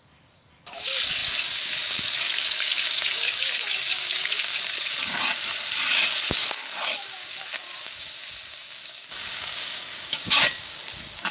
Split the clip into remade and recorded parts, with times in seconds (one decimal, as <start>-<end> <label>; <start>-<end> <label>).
0.0-5.3 remade; 5.3-5.9 recorded; 5.9-11.3 remade